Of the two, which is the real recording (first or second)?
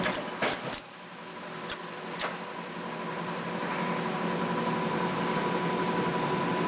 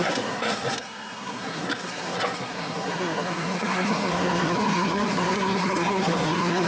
first